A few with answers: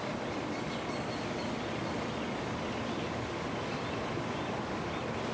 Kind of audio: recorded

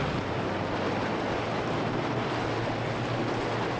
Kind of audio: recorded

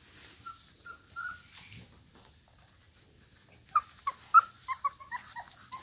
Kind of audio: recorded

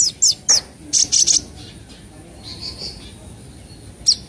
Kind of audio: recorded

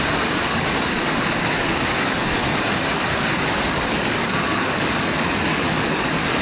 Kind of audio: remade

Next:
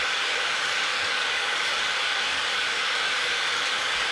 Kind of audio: remade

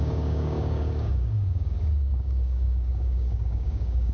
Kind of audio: remade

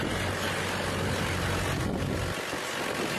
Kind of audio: recorded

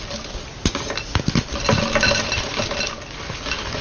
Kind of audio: recorded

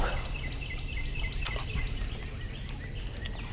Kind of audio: recorded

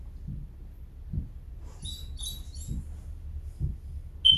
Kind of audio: recorded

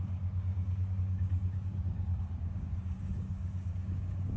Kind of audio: remade